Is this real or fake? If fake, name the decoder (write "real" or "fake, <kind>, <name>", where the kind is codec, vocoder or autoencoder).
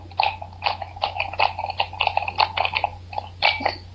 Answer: real